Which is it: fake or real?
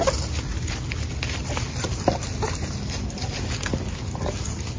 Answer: real